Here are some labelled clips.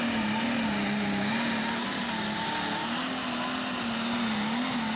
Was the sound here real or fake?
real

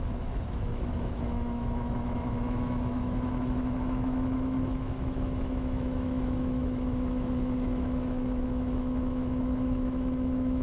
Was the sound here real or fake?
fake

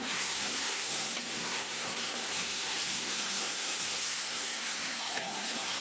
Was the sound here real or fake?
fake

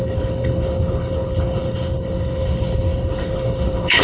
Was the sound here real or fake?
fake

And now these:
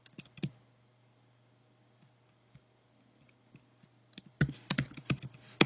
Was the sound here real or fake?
real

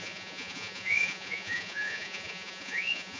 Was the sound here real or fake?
fake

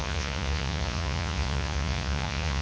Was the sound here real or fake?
fake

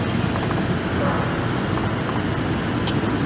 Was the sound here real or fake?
real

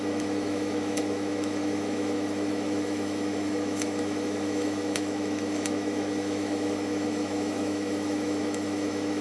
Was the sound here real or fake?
fake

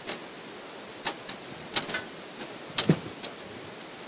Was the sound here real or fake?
real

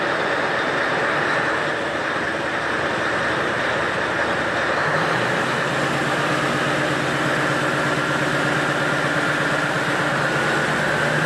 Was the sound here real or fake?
real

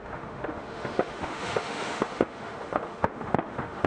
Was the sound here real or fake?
fake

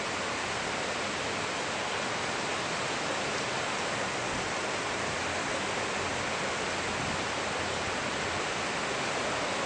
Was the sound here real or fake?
real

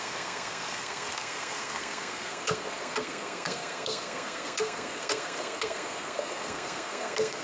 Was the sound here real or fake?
fake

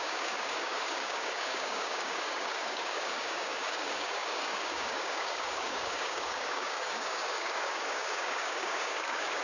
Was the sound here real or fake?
fake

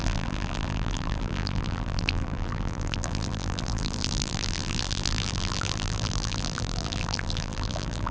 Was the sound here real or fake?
fake